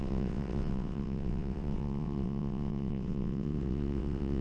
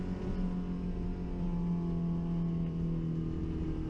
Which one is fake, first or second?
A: first